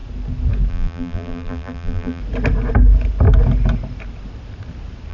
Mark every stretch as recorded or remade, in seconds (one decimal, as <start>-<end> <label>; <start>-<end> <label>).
0.0-0.7 recorded; 0.7-2.2 remade; 2.2-5.1 recorded